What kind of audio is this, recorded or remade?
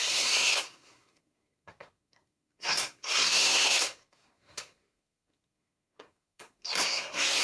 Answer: remade